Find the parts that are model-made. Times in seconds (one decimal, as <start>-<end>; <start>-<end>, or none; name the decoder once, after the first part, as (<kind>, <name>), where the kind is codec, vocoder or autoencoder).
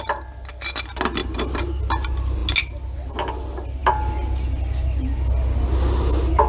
1.2-1.8 (vocoder, BigVGAN v2)